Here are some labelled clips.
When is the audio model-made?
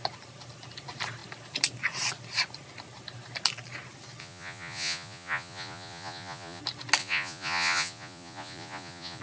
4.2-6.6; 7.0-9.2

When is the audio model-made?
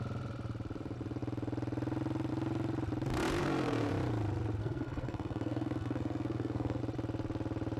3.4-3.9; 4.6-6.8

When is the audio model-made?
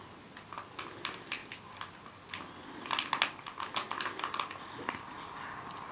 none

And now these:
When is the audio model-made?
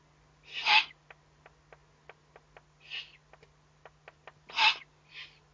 none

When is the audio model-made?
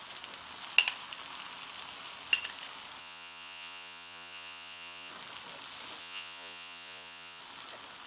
3.0-5.1; 6.0-7.4